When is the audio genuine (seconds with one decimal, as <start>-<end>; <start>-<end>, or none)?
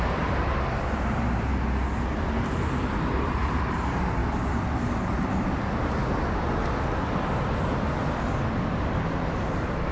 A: 1.5-2.4; 4.2-8.8